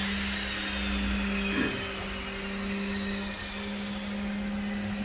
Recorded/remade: recorded